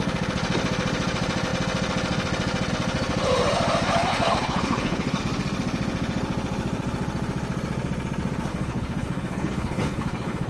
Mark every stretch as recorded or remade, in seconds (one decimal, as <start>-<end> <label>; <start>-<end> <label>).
0.0-4.1 recorded; 4.1-5.2 remade; 5.2-8.5 recorded; 8.5-10.5 remade